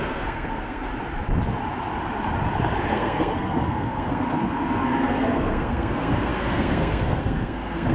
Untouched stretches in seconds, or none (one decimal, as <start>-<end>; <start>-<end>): 0.9-2.9